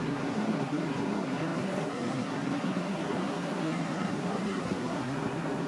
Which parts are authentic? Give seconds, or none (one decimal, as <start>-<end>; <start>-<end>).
none

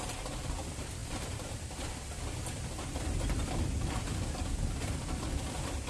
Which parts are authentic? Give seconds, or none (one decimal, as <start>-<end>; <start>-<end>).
0.0-5.9

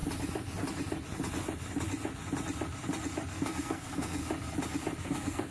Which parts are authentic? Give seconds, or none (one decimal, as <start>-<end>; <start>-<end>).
0.0-3.3; 4.2-5.0

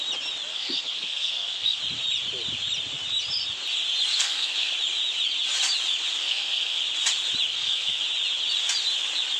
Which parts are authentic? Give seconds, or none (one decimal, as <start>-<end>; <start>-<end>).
0.0-0.5; 1.8-4.2; 4.7-6.2; 6.8-7.5; 8.0-9.4

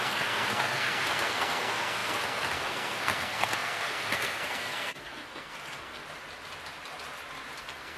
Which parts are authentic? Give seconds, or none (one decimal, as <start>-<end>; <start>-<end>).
6.0-7.6

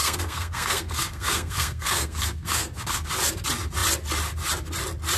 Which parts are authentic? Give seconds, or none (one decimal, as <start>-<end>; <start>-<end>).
3.1-5.2

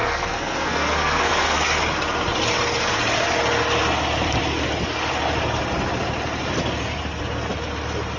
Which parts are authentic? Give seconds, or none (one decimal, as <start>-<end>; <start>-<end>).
1.8-8.2

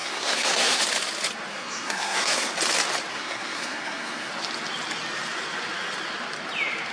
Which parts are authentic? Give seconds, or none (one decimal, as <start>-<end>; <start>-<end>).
0.8-1.5; 2.5-3.1; 4.3-6.9